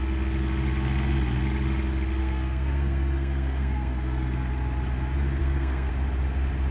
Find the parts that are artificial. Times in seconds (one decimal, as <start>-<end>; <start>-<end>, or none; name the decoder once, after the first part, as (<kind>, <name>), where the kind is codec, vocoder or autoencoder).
2.2-4.5 (codec, SNAC); 5.4-5.9